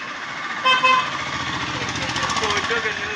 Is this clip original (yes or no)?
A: yes